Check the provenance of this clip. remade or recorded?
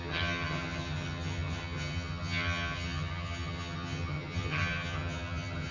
remade